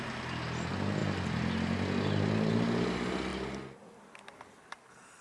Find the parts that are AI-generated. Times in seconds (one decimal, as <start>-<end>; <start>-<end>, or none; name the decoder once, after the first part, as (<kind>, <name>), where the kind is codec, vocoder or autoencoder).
none